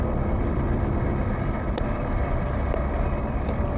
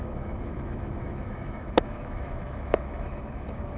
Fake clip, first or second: second